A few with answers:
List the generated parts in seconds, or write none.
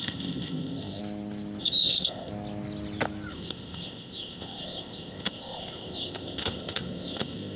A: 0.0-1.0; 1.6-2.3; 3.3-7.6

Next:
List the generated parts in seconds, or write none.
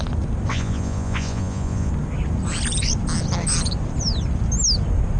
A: 0.5-1.9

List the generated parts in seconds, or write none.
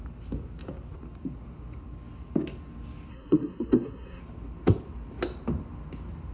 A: 3.1-4.2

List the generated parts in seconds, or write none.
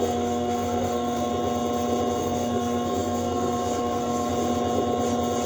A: 0.0-1.3; 2.2-4.3